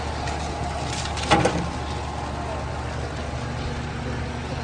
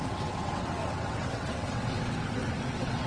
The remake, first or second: second